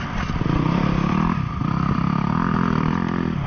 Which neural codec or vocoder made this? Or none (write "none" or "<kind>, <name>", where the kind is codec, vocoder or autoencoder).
vocoder, BigVGAN v2